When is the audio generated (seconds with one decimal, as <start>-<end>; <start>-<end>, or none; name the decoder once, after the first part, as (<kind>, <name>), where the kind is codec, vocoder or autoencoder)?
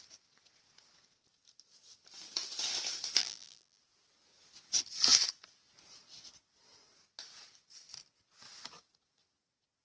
3.2-3.8 (vocoder, BigVGAN v2)